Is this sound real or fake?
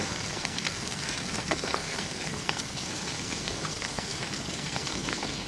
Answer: fake